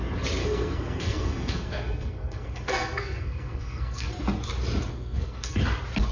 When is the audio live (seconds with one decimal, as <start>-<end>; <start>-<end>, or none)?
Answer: 0.0-0.4; 4.1-4.9; 5.6-6.1